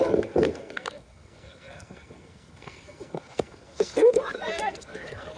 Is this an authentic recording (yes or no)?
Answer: no